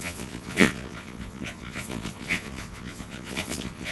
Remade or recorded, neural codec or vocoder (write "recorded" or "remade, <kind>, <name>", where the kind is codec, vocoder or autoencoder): remade, vocoder, Vocos